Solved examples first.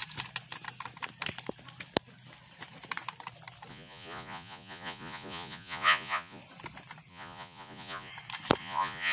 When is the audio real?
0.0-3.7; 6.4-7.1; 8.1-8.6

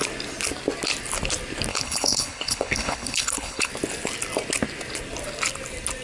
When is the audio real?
0.0-1.7; 3.7-6.0

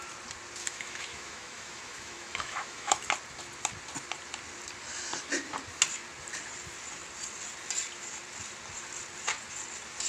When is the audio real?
0.0-0.6; 3.1-10.1

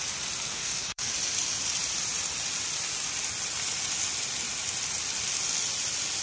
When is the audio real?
0.0-0.5; 1.1-6.2